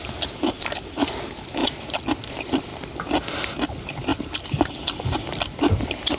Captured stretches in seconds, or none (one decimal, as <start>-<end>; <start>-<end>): 1.6-2.3; 2.7-3.3